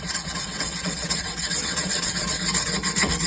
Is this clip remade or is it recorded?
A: remade